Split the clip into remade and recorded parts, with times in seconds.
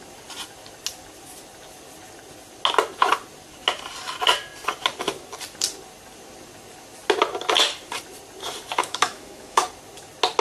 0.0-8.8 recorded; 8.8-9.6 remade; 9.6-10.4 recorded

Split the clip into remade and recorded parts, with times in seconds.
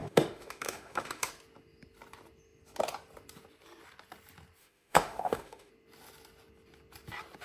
0.0-1.3 remade; 1.3-4.6 recorded; 4.6-5.7 remade; 5.7-7.4 recorded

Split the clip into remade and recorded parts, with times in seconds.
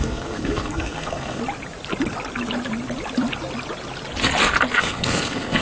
0.0-1.4 remade; 1.4-4.8 recorded; 4.8-5.6 remade